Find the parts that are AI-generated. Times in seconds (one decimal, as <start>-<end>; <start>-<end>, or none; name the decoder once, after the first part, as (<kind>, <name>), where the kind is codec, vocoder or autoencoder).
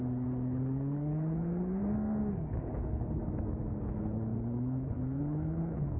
0.0-1.8 (codec, HILCodec); 2.3-3.2; 3.8-6.0